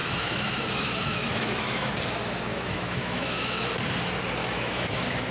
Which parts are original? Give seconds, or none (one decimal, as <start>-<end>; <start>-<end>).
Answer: 1.9-2.5; 3.7-4.4